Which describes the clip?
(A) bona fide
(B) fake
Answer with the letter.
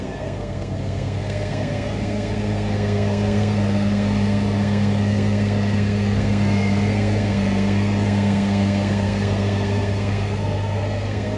B